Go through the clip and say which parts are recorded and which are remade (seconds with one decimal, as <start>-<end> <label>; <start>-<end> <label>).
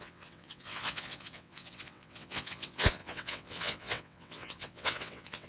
0.0-5.5 remade